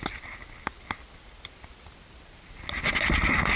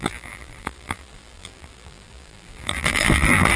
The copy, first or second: second